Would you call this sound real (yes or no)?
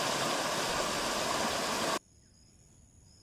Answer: yes